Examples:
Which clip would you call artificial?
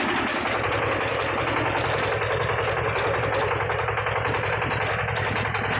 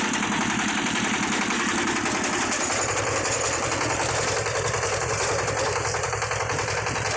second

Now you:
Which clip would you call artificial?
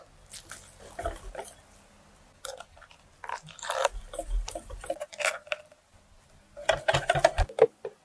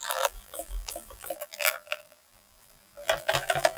second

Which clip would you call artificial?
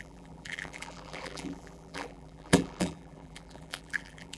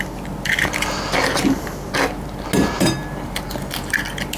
first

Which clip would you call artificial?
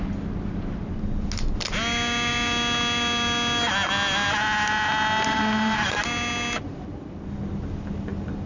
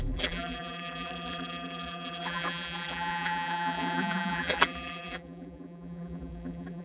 second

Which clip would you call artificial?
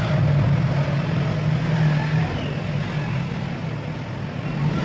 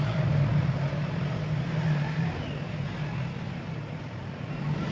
second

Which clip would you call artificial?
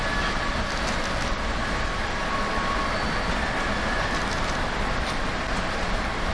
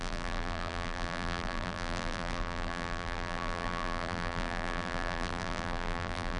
second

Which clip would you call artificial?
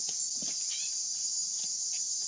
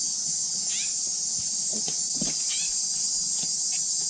first